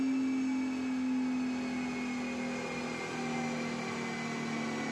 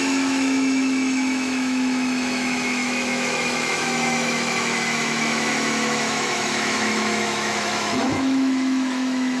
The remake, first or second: second